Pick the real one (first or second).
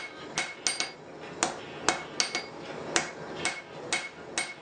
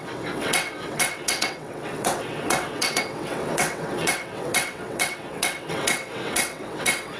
first